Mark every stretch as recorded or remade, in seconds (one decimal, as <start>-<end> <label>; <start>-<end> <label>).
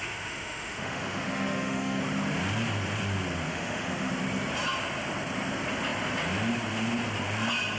0.0-2.0 remade; 2.0-3.5 recorded; 3.5-4.1 remade; 4.1-7.8 recorded